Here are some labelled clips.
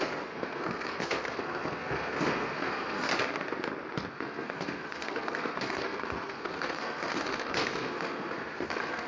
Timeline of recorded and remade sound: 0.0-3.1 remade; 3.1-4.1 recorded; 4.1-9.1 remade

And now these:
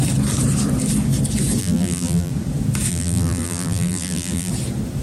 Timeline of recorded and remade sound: 0.0-1.6 recorded; 1.6-2.3 remade; 2.3-2.9 recorded; 2.9-4.5 remade; 4.5-5.0 recorded

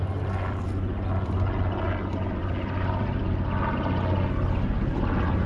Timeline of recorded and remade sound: 0.0-2.4 recorded; 2.4-3.3 remade; 3.3-5.5 recorded

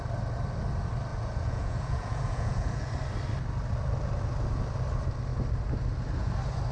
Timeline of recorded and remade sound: 0.0-1.1 recorded; 1.1-2.9 remade; 2.9-6.7 recorded

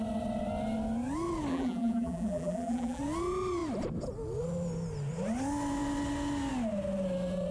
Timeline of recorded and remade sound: 0.0-1.5 recorded; 1.5-3.0 remade; 3.0-7.5 recorded

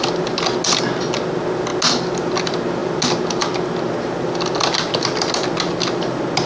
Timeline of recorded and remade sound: 0.0-6.5 recorded